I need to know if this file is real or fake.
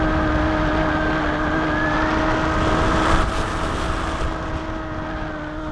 real